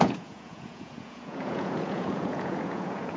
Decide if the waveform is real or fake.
fake